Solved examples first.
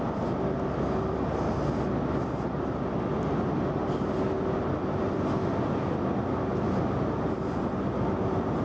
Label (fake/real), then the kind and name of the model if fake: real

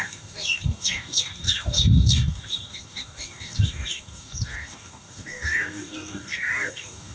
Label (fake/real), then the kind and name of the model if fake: fake, codec, DAC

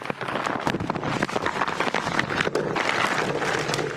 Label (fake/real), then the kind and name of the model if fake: real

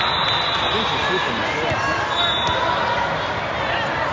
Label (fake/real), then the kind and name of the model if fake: real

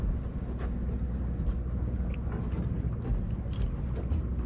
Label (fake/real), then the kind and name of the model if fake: real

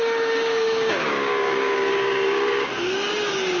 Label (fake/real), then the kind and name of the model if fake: fake, codec, DAC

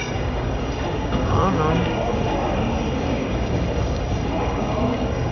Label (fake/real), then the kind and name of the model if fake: fake, codec, DAC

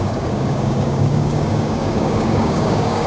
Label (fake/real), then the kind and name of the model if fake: fake, codec, DAC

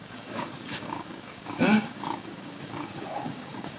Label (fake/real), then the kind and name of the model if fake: fake, codec, DAC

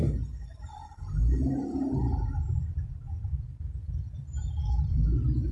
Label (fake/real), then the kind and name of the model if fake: real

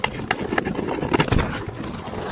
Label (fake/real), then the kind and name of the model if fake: real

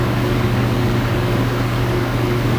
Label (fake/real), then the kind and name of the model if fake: fake, codec, DAC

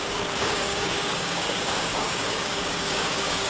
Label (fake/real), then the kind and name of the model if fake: fake, codec, DAC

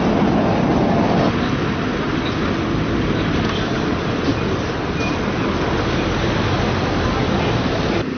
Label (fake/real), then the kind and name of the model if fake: real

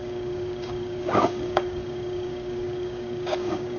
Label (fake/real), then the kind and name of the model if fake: fake, codec, DAC